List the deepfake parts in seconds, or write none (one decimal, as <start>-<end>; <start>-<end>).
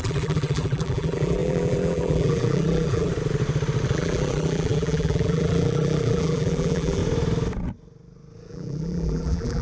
0.0-3.1; 3.9-7.0; 8.5-9.6